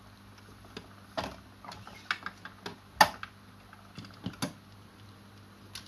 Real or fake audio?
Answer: real